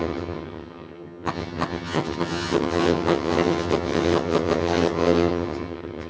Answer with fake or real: fake